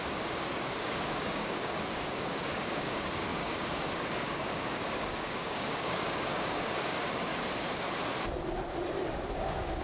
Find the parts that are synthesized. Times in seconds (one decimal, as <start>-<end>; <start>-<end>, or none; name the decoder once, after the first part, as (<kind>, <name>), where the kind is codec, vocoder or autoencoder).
0.0-7.3 (codec, DAC); 9.3-9.8